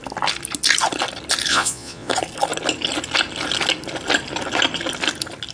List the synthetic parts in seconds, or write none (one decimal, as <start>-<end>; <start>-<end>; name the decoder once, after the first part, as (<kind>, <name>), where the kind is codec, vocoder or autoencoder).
1.5-2.1 (vocoder, Vocos)